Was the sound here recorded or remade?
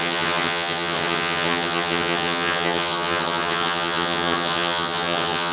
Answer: remade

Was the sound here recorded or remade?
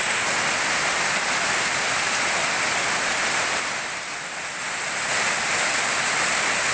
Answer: recorded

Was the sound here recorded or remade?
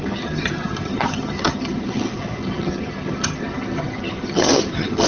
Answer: remade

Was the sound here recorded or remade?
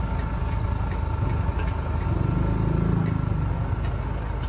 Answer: recorded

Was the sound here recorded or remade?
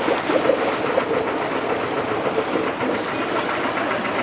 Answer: recorded